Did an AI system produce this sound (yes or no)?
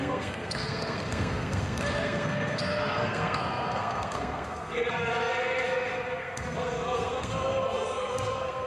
yes